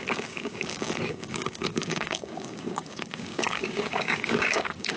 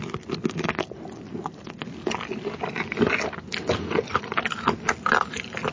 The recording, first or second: second